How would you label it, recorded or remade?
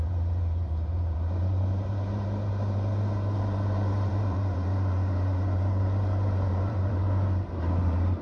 remade